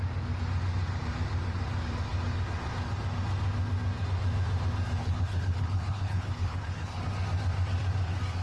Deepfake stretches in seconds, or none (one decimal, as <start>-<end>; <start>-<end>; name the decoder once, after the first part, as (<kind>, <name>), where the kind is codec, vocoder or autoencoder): 5.0-7.0 (codec, HILCodec)